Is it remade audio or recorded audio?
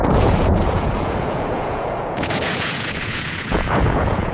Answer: remade